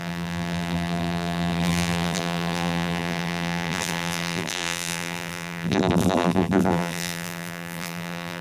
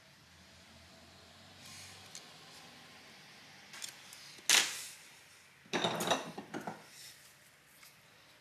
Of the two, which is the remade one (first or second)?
first